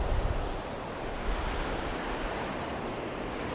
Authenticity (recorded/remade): recorded